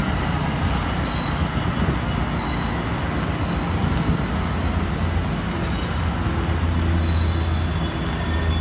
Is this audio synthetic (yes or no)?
no